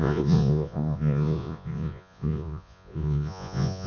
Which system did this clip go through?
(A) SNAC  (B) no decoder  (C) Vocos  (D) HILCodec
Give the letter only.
C